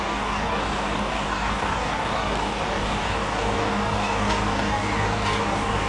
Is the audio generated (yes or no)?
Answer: yes